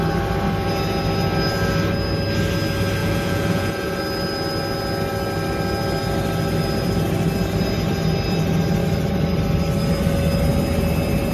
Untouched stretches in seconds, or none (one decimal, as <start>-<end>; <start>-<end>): 0.0-3.0; 4.0-11.3